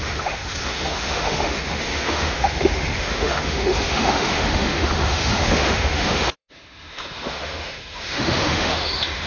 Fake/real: fake